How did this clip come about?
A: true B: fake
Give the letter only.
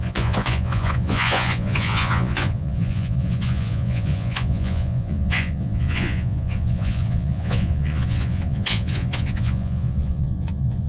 B